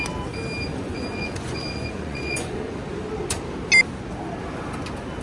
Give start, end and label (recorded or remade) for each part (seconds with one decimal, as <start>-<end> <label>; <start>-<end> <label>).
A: 0.0-0.7 recorded; 0.7-2.8 remade; 2.8-5.2 recorded